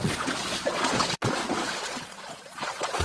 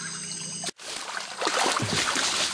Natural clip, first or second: second